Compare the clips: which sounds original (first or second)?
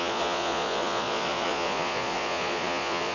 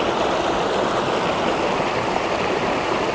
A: second